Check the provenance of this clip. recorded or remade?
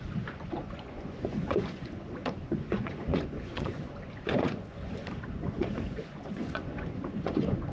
remade